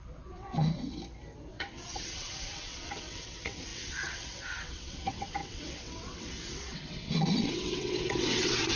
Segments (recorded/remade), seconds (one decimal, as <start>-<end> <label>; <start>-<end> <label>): 0.0-1.0 remade; 1.0-1.5 recorded; 1.5-8.8 remade